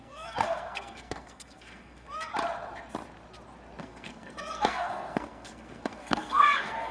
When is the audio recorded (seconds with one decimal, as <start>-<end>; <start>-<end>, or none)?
2.3-3.8